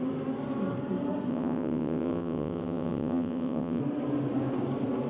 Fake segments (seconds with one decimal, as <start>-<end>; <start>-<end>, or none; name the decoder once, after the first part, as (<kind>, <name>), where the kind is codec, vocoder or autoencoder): 1.3-3.8 (vocoder, WaveNeXt)